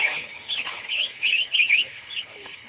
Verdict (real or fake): fake